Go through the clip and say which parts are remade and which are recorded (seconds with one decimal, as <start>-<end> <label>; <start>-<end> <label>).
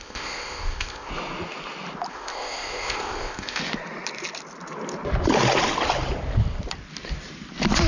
0.0-1.1 remade; 1.1-2.1 recorded; 2.1-3.6 remade; 3.6-7.9 recorded